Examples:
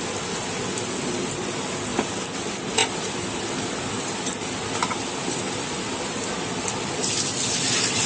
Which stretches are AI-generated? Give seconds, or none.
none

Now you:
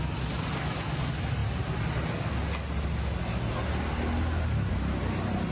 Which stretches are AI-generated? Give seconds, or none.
none

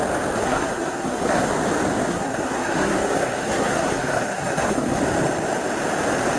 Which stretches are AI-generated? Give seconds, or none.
0.4-1.5 (codec, SNAC); 2.1-5.0

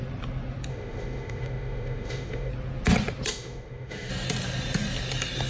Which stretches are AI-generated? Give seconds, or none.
0.7-2.5 (autoencoder, DAC-VAE); 3.3-4.1